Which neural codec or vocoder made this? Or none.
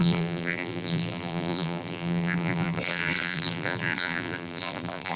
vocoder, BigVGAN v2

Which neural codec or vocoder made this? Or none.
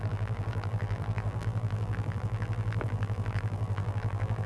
vocoder, BigVGAN v2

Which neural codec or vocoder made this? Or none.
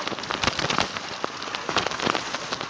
vocoder, BigVGAN v2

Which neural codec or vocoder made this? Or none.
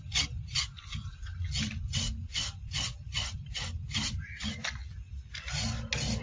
none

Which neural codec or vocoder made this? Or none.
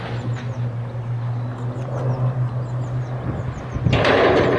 none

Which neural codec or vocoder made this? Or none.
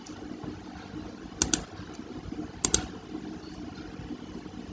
none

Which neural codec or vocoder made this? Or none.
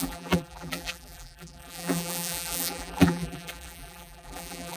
vocoder, BigVGAN v2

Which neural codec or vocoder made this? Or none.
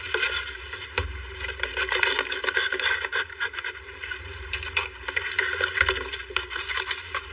vocoder, BigVGAN v2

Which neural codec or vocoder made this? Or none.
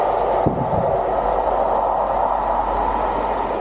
none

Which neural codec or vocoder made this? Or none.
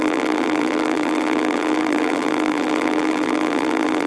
vocoder, BigVGAN v2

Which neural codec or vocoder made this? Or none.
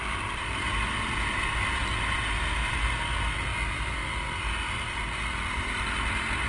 none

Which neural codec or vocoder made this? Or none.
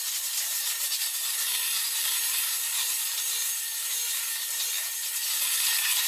none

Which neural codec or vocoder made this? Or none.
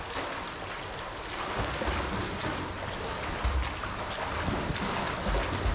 none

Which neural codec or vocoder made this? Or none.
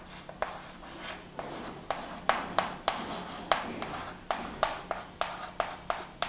none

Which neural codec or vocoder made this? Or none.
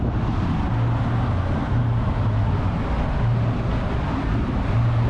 none